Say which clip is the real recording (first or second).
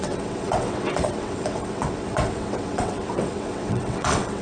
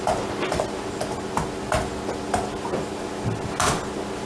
second